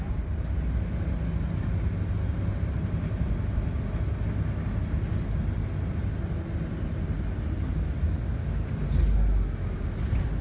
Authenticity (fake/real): real